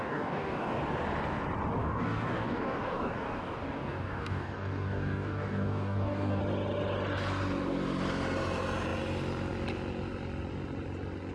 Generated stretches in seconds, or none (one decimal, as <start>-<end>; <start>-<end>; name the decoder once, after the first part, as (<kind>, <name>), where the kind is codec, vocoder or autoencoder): 0.0-0.8 (codec, DAC); 1.8-6.4